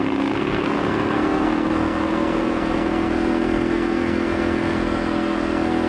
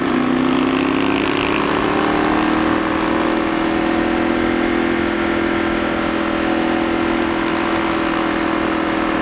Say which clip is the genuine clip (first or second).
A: second